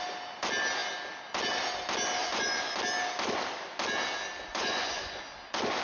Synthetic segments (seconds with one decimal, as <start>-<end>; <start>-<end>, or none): 2.2-2.8; 4.5-5.2